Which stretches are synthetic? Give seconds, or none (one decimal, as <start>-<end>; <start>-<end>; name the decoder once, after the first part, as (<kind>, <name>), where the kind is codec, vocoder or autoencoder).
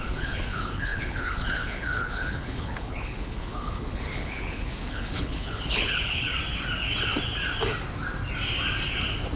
0.0-6.3 (codec, HILCodec)